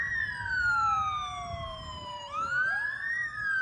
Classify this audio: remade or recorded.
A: remade